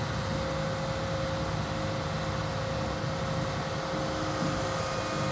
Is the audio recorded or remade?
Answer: recorded